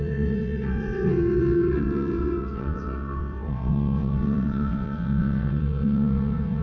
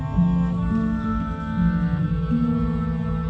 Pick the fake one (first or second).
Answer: first